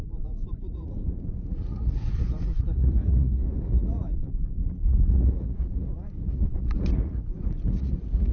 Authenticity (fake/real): fake